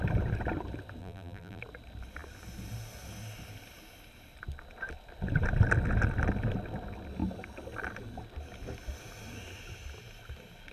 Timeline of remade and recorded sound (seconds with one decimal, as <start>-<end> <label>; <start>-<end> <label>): 0.0-1.0 recorded; 1.0-1.6 remade; 1.6-10.7 recorded

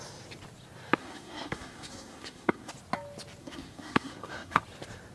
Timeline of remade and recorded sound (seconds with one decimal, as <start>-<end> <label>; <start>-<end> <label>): 0.0-1.0 recorded; 1.0-2.7 remade; 2.7-3.4 recorded; 3.4-4.6 remade; 4.6-5.1 recorded